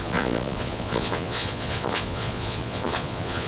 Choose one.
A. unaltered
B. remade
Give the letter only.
B